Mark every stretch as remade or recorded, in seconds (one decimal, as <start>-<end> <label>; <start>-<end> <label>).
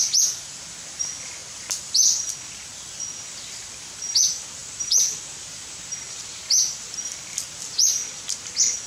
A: 0.0-8.9 recorded